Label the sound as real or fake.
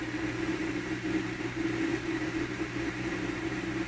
fake